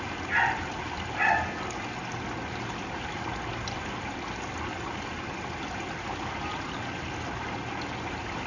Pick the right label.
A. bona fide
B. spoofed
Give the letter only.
A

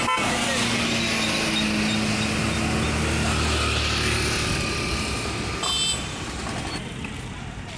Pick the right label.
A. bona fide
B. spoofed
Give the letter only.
A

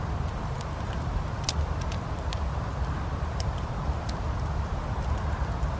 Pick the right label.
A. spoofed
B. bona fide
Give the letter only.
B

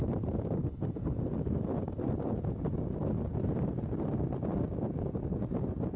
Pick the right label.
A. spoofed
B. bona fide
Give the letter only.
B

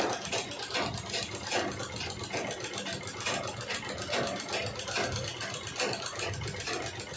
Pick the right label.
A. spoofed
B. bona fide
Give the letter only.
B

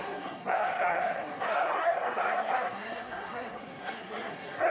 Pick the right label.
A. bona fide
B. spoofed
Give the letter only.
B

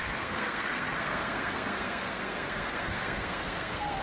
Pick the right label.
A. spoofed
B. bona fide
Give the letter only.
A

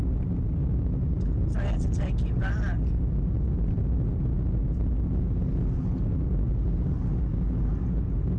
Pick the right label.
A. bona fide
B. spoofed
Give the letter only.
A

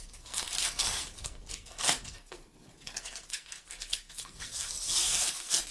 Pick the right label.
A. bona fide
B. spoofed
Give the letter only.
B